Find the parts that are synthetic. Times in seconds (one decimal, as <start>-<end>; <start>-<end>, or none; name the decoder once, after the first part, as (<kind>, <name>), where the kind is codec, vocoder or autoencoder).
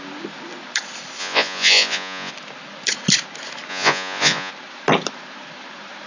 1.2-2.3 (vocoder, Vocos); 3.7-4.5